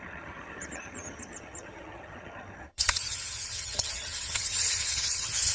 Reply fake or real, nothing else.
fake